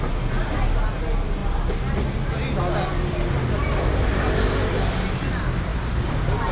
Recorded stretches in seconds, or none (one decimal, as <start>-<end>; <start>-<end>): 0.0-6.5